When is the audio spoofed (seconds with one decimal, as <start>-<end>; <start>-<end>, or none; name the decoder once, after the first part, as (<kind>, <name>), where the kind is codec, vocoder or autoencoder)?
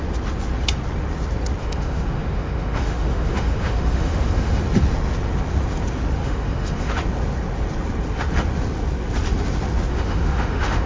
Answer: 1.6-4.6 (autoencoder, DAC-VAE); 6.2-6.9; 9.9-10.9